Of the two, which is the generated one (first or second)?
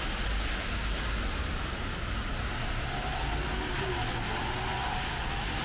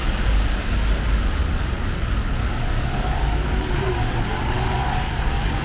second